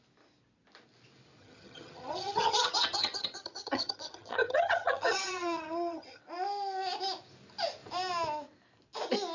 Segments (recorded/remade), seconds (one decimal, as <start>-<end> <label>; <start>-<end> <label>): 0.0-1.4 recorded; 1.4-6.2 remade; 6.2-9.3 recorded